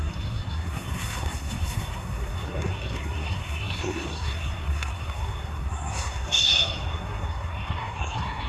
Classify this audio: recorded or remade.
remade